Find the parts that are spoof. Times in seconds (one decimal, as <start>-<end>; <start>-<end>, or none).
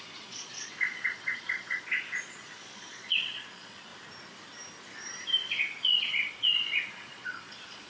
0.0-3.9; 5.6-7.9